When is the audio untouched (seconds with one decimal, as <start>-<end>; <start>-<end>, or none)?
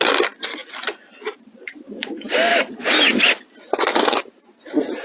0.0-1.1; 2.1-2.5; 3.0-5.0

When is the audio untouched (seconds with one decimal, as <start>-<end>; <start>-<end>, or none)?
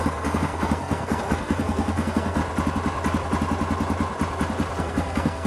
2.4-4.8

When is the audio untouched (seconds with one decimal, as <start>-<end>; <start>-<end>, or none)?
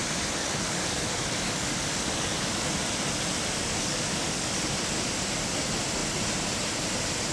0.0-0.4; 2.7-3.6; 4.6-7.3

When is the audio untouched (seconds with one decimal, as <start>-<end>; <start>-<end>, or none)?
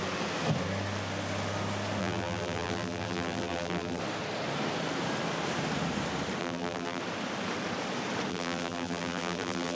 0.0-2.0; 4.0-6.4; 7.0-8.3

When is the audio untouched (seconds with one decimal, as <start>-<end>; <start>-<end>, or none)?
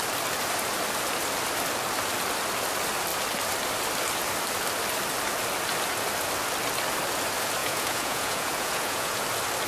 0.0-7.6; 9.2-9.7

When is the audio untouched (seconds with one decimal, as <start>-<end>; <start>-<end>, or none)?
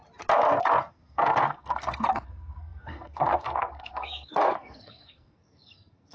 0.0-0.9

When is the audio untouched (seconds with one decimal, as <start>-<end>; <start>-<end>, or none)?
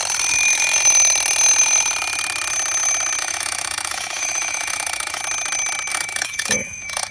0.0-3.2; 5.2-5.9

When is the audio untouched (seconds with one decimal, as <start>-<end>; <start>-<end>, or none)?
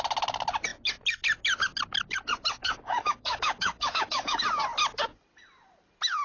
0.0-2.6; 4.4-6.2